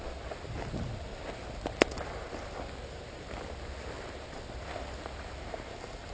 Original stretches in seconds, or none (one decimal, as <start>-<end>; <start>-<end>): 0.0-6.1